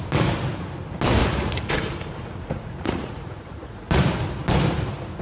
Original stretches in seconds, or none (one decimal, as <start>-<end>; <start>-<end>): 0.0-1.2; 1.7-2.2; 4.0-5.2